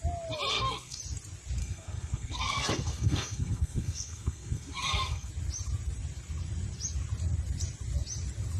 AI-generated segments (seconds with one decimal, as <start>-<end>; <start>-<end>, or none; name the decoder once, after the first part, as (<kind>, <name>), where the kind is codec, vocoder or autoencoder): 0.5-1.0 (codec, SNAC); 1.6-5.3

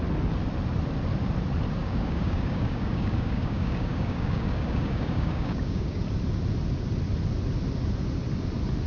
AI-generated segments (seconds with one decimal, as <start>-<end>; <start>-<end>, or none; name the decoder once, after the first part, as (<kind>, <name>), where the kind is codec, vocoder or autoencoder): 1.8-6.0 (codec, DAC)

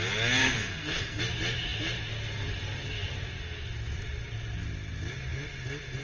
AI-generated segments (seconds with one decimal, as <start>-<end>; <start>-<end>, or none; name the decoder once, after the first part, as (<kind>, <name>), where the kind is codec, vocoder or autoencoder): 0.4-1.2 (codec, SNAC)

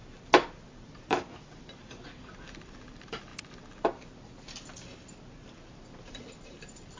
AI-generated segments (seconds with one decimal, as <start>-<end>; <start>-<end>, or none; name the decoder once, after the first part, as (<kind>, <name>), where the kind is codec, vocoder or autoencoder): 1.6-3.3 (vocoder, BigVGAN v2); 6.1-7.0

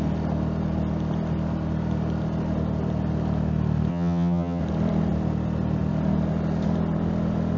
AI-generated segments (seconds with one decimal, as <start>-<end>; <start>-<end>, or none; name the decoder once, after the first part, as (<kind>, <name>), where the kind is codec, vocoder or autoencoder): 3.9-4.6 (vocoder, HiFi-GAN)

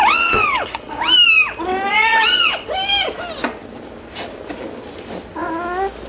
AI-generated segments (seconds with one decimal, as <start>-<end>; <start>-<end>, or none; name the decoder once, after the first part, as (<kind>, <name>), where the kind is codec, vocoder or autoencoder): 0.0-1.0 (vocoder, WaveNeXt); 1.9-2.7

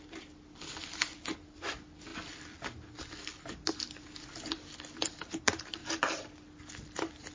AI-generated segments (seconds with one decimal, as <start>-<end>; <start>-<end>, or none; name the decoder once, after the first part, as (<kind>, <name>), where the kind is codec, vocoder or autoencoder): none

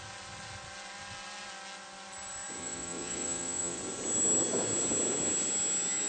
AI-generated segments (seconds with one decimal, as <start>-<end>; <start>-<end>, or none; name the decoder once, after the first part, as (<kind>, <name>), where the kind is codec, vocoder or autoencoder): 2.6-3.8 (vocoder, WaveNeXt)